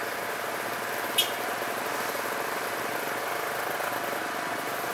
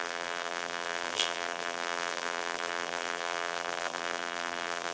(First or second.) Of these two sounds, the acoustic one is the first